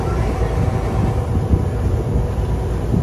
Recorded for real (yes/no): yes